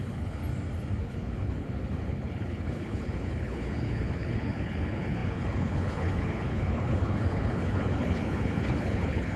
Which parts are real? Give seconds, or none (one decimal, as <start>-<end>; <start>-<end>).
0.4-1.0